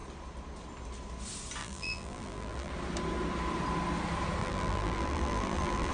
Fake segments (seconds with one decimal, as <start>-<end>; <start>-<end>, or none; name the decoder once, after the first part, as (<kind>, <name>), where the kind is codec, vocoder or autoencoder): 1.6-2.7 (vocoder, BigVGAN v2); 4.4-5.9